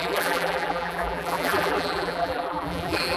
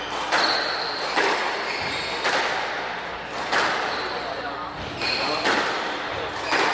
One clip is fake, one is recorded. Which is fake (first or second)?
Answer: first